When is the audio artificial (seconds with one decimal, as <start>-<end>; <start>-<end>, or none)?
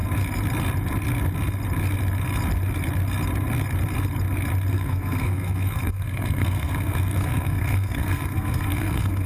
4.7-9.3